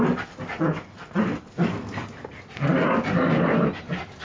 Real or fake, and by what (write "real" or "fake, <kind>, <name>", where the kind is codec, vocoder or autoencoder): real